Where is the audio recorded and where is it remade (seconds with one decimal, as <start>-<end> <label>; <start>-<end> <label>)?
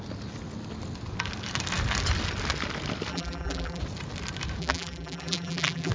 0.0-3.1 recorded; 3.1-3.8 remade; 3.8-4.6 recorded; 4.6-5.9 remade